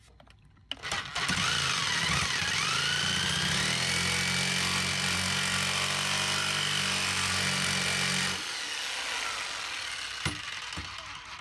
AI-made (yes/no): no